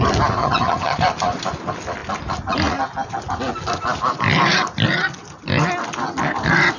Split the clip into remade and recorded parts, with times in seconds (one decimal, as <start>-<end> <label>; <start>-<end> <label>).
0.0-0.4 recorded; 0.4-1.0 remade; 1.0-6.8 recorded